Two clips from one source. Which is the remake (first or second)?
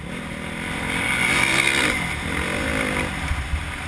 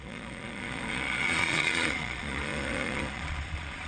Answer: second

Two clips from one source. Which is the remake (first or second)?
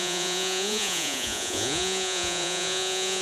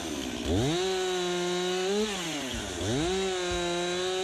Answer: first